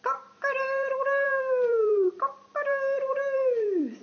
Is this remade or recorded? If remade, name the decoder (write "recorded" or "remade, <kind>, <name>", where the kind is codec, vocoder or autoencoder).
remade, vocoder, BigVGAN v2